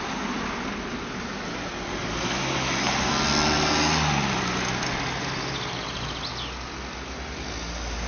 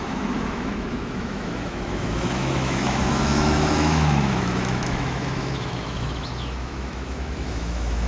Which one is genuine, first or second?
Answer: first